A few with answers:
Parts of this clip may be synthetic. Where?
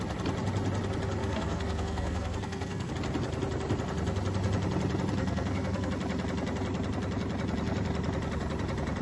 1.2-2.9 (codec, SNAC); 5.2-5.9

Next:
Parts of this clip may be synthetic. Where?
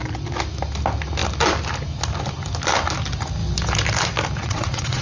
4.4-5.0 (vocoder, WaveNeXt)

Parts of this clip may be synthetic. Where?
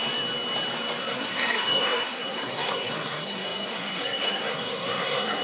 1.0-5.4 (codec, SNAC)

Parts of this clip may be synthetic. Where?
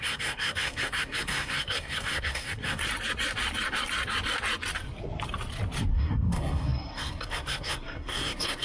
0.0-2.8 (codec, SNAC); 5.9-8.6